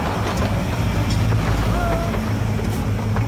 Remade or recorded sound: recorded